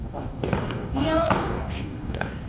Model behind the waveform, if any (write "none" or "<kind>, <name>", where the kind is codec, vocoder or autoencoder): codec, DAC